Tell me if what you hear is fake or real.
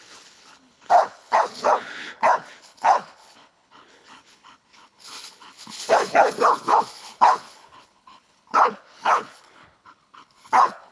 fake